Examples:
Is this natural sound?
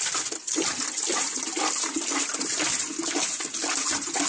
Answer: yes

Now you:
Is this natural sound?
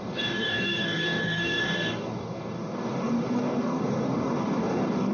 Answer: no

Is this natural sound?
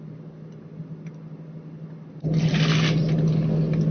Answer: yes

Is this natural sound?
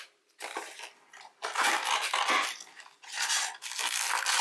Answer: yes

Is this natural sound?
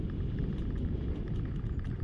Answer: yes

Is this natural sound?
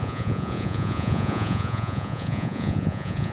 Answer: no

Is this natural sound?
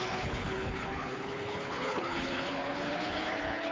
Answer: no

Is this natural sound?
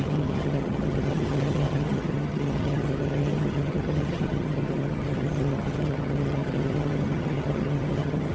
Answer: no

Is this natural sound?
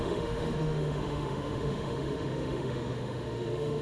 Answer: no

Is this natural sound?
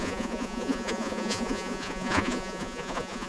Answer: no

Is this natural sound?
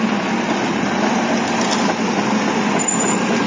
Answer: yes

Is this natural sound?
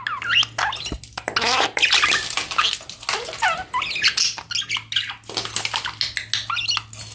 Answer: yes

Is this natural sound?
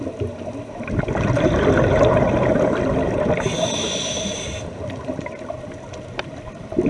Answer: yes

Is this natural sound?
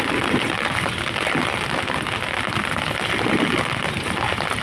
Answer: yes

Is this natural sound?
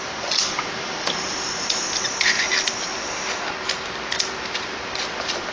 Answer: yes